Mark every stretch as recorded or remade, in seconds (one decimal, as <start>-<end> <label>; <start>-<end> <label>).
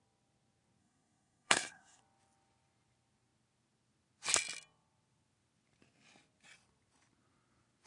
0.0-0.8 recorded; 0.8-2.0 remade; 2.0-7.9 recorded